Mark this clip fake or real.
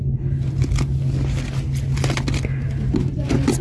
real